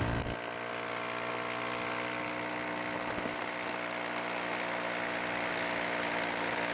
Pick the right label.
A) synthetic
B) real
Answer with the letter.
B